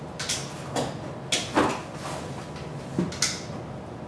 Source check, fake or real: real